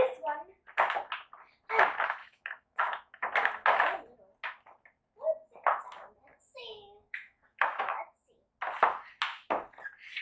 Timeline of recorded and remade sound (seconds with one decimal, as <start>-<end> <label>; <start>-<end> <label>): 0.0-2.2 recorded; 2.2-3.3 remade; 3.3-6.3 recorded; 6.3-8.5 remade; 8.5-10.2 recorded

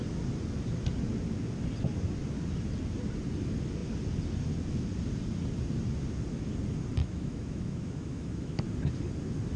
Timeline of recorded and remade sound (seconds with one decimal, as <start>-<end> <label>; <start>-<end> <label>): 0.0-7.0 recorded; 7.0-8.6 remade; 8.6-9.6 recorded

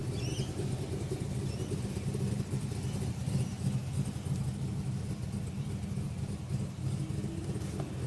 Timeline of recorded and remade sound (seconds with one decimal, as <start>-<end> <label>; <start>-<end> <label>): 0.0-8.1 recorded

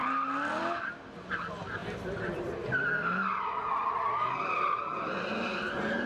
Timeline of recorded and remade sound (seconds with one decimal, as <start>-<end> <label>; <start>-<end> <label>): 0.0-6.1 recorded

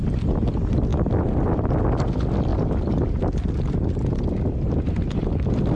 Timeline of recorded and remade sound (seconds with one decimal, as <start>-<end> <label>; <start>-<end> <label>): 0.0-5.8 recorded

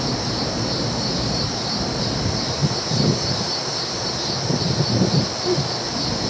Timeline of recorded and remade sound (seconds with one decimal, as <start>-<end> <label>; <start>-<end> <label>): 0.0-6.3 recorded

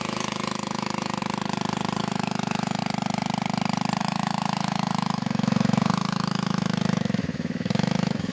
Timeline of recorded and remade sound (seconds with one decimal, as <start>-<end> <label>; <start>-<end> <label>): 0.0-1.2 remade; 1.2-2.0 recorded; 2.0-2.8 remade; 2.8-4.0 recorded; 4.0-8.3 remade